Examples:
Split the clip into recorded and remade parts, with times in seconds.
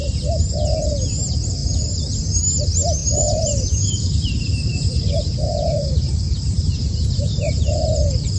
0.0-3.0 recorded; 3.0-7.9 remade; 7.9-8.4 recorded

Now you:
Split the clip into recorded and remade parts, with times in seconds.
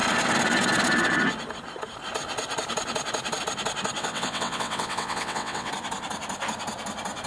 0.0-4.0 recorded; 4.0-5.7 remade; 5.7-7.3 recorded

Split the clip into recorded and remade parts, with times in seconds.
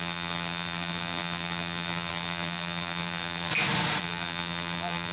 0.0-3.5 remade; 3.5-4.0 recorded; 4.0-5.1 remade